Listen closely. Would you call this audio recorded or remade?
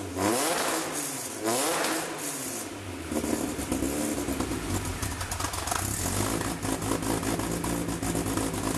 recorded